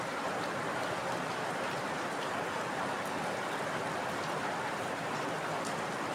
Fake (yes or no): no